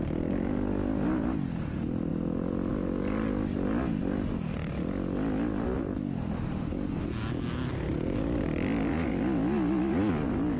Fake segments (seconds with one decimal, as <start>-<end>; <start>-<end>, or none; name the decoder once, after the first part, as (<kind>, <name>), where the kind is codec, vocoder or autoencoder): none